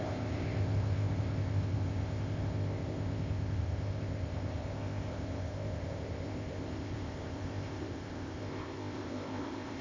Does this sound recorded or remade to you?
remade